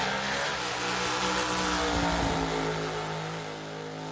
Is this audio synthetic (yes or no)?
no